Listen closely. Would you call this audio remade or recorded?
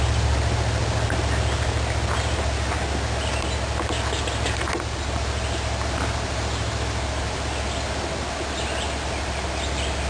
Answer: recorded